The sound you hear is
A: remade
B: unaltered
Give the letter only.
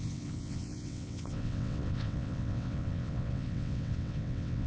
A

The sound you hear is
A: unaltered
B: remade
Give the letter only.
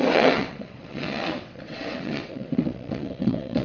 B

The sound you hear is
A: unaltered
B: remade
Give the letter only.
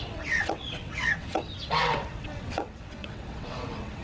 B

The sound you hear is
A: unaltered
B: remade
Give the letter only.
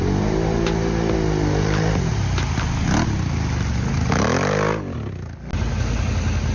A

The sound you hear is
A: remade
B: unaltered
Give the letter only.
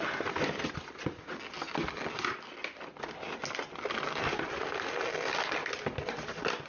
B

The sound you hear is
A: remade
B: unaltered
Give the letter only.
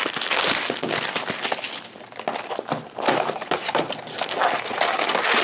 B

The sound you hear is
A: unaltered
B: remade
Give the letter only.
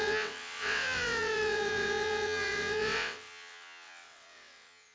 B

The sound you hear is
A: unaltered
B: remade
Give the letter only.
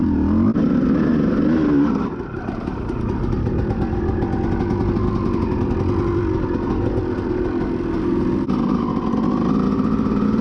A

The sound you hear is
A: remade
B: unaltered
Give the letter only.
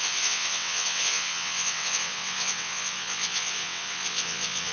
A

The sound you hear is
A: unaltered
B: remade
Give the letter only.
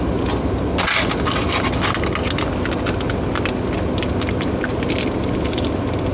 A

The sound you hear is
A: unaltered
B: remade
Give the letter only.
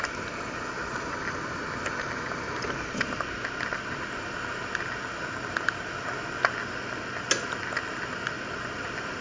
A